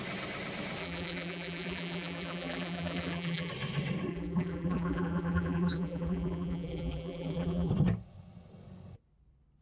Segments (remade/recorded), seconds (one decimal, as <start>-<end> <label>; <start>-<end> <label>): 0.0-0.8 recorded; 0.8-3.5 remade; 3.5-4.1 recorded; 4.1-7.7 remade; 7.7-9.6 recorded